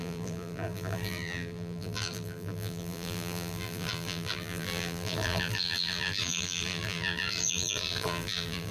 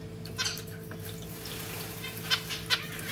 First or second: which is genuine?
second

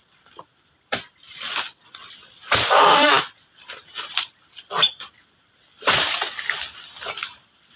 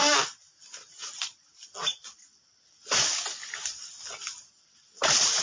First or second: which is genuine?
second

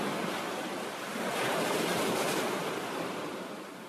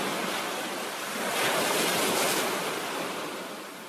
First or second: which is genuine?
second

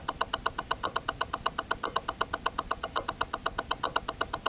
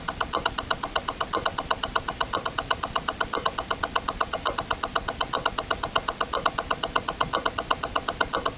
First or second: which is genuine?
first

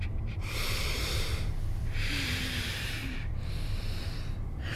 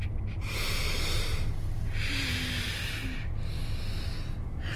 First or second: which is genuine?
second